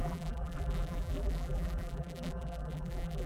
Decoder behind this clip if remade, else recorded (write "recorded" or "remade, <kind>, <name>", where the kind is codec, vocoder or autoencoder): remade, vocoder, BigVGAN v2